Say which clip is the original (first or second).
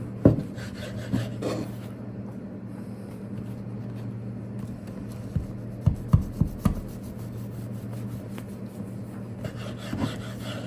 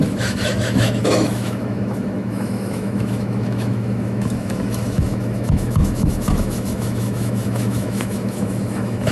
first